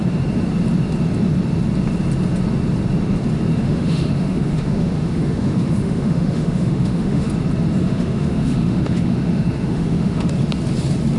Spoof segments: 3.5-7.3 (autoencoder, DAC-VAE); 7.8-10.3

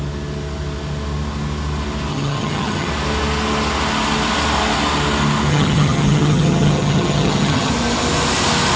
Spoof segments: 2.1-2.9 (vocoder, HiFi-GAN); 5.5-7.7

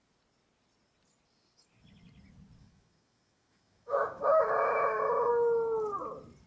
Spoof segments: 2.6-5.3 (autoencoder, DAC-VAE)

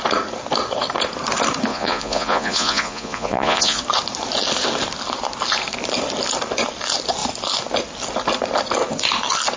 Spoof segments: 1.7-3.8 (vocoder, Vocos)